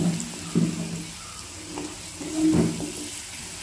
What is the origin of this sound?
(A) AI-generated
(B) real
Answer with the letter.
B